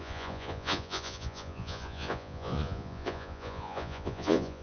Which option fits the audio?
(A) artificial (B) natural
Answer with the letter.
A